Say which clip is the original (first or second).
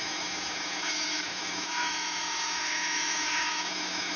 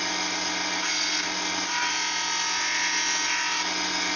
second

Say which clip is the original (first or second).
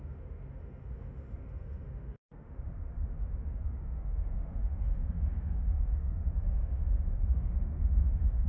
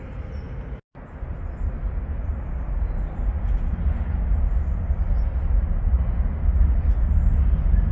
second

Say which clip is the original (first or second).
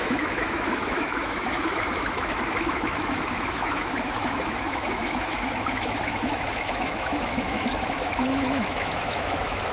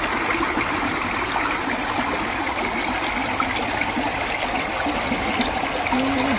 second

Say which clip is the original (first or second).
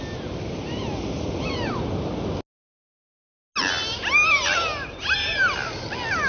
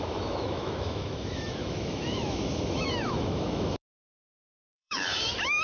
first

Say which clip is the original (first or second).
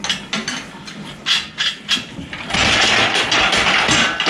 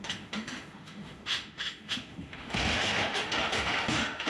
first